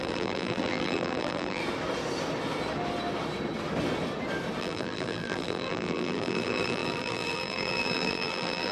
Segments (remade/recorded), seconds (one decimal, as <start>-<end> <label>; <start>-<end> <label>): 0.0-1.6 remade; 1.6-4.6 recorded; 4.6-8.7 remade